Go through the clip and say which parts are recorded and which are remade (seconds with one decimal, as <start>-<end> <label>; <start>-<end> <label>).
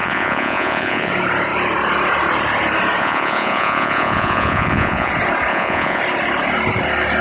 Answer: 0.0-1.1 remade; 1.1-3.0 recorded; 3.0-5.1 remade; 5.1-5.5 recorded; 5.5-6.0 remade; 6.0-7.2 recorded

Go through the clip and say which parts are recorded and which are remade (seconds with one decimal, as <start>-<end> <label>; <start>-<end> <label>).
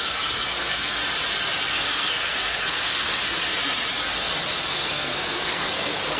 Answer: 0.0-1.0 remade; 1.0-1.7 recorded; 1.7-3.2 remade; 3.2-4.7 recorded; 4.7-6.2 remade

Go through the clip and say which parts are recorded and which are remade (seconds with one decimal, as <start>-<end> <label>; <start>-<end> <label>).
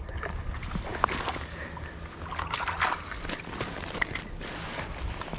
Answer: 0.0-5.4 recorded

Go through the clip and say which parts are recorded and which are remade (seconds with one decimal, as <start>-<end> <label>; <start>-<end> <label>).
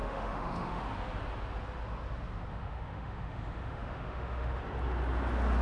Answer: 0.0-0.8 remade; 0.8-2.5 recorded; 2.5-4.6 remade; 4.6-5.6 recorded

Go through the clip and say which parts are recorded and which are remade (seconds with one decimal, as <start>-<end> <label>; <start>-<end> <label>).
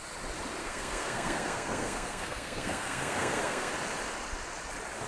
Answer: 0.0-0.6 recorded; 0.6-3.7 remade; 3.7-5.1 recorded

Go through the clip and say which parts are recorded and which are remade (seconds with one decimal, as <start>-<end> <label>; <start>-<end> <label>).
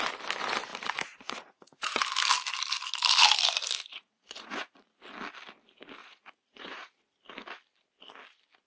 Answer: 0.0-0.7 recorded; 0.7-2.0 remade; 2.0-3.9 recorded; 3.9-5.0 remade; 5.0-6.0 recorded; 6.0-7.0 remade; 7.0-8.7 recorded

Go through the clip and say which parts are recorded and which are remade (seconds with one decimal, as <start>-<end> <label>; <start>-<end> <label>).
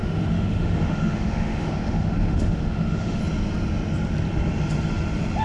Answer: 0.0-3.2 remade; 3.2-5.4 recorded